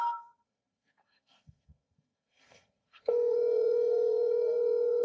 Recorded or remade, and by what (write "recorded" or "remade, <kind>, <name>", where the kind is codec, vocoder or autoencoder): remade, codec, SNAC